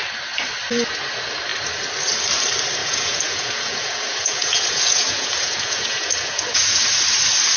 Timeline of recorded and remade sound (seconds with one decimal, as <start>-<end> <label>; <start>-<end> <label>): 0.0-2.8 recorded; 2.8-6.8 remade; 6.8-7.6 recorded